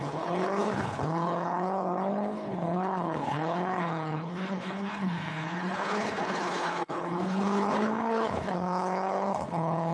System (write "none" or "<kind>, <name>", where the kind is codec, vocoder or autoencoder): codec, HILCodec